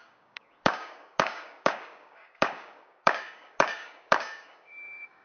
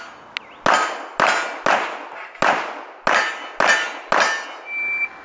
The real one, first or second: second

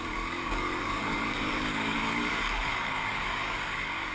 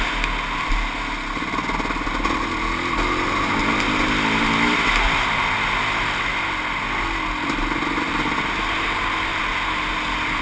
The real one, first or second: second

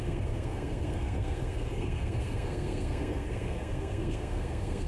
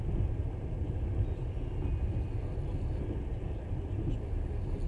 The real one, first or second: second